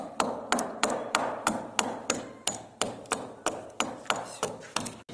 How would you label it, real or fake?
fake